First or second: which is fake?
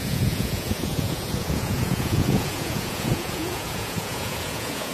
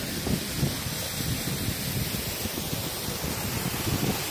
first